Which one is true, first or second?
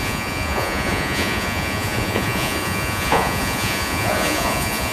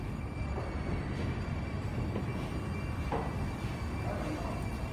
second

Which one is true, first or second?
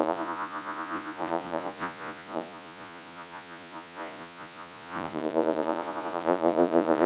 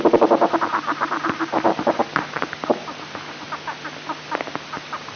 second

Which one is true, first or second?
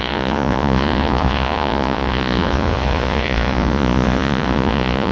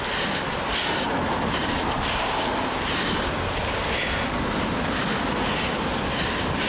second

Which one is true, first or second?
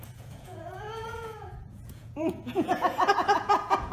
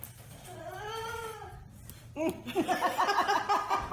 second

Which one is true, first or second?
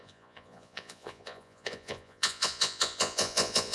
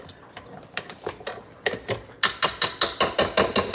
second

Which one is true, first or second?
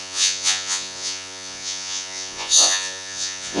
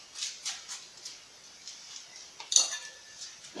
second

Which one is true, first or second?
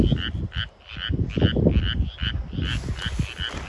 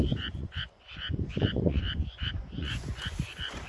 first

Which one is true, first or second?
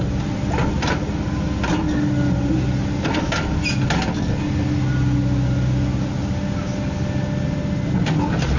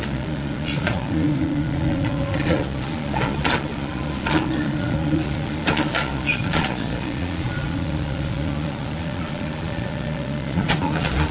first